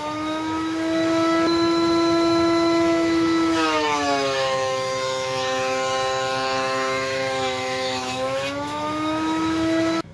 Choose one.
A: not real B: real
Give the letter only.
A